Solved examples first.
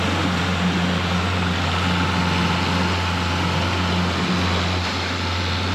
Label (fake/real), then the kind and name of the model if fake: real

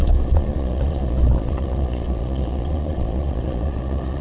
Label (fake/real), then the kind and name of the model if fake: fake, vocoder, Vocos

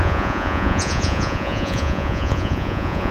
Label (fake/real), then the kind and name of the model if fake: fake, vocoder, Vocos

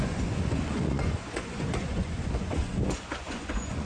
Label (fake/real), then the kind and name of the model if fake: fake, vocoder, Vocos